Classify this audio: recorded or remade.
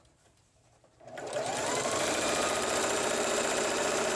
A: remade